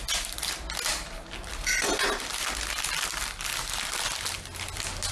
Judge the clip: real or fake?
real